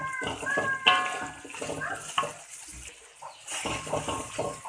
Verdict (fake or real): real